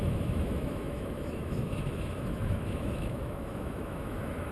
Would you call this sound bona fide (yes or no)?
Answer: no